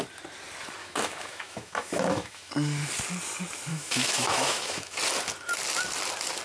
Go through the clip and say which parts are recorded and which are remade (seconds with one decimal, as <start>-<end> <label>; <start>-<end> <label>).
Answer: 0.0-0.8 recorded; 0.8-2.5 remade; 2.5-3.7 recorded; 3.7-5.0 remade; 5.0-6.4 recorded